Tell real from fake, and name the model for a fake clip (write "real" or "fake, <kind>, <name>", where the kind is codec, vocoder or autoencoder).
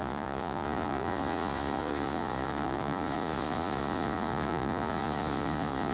fake, vocoder, Vocos